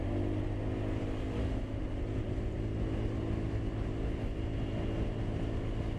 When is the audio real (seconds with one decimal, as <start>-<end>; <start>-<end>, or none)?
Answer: 0.0-1.4; 2.0-6.0